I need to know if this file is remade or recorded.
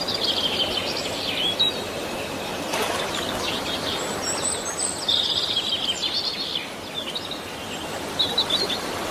recorded